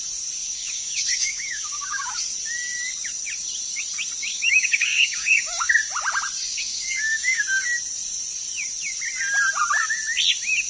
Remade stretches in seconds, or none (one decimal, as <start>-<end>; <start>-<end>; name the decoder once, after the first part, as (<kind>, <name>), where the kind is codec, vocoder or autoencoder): 0.4-2.1 (codec, DAC); 4.3-5.7; 6.5-7.4